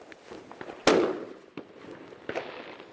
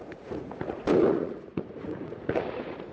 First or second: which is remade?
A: second